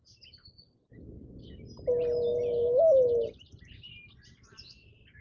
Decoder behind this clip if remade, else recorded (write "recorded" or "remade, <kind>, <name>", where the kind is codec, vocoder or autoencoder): recorded